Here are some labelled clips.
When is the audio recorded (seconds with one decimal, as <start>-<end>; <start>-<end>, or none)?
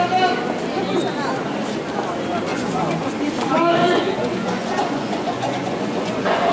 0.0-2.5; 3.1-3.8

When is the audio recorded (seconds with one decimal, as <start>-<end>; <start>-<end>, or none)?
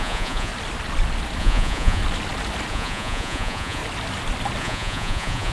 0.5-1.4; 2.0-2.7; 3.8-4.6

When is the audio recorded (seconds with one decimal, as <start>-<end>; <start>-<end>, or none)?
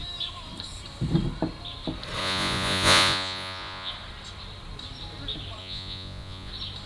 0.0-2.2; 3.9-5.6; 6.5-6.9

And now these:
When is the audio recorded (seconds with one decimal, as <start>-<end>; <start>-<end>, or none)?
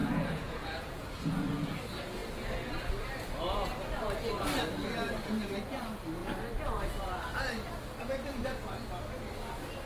1.8-9.9